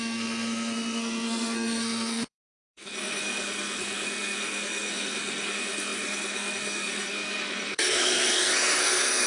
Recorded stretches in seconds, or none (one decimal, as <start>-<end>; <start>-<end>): none